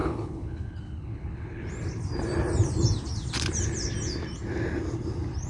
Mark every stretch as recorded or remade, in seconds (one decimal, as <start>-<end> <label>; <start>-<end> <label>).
0.0-1.7 remade; 1.7-5.5 recorded